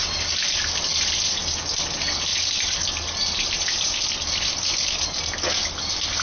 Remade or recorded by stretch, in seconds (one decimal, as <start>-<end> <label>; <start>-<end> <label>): 0.0-6.2 recorded